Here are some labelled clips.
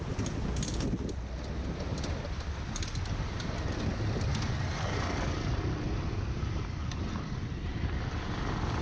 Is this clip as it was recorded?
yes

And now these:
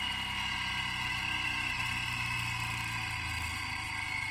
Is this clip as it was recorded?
yes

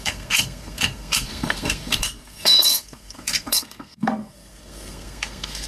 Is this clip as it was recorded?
no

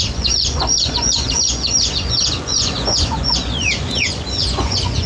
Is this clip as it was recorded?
no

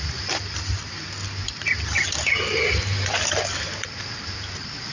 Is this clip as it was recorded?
yes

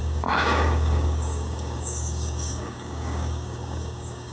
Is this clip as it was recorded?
no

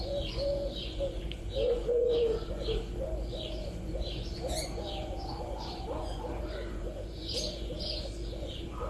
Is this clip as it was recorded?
no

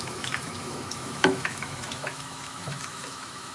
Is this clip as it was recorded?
no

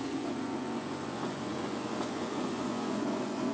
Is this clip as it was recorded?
no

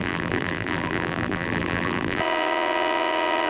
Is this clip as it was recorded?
no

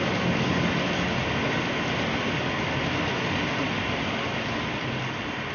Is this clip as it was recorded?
yes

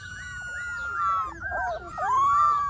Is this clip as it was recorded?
yes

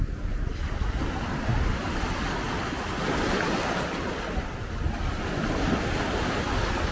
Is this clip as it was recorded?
yes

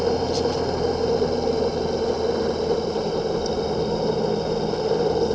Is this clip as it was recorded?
yes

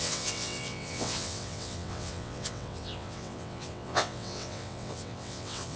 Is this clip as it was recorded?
no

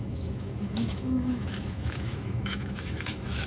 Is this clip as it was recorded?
no